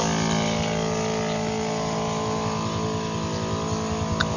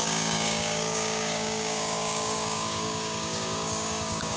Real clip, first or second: first